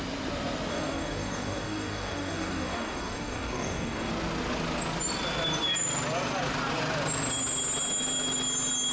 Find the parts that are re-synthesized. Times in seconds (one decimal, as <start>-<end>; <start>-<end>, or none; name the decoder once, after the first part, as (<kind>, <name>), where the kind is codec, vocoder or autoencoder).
0.7-4.1 (codec, DAC)